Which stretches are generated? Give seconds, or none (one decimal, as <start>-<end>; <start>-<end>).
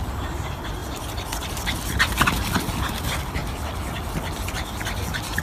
0.8-2.8